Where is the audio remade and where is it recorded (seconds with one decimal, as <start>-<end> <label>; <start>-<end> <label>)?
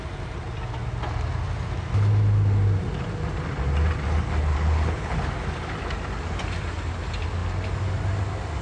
0.0-4.5 recorded; 4.5-5.3 remade; 5.3-8.6 recorded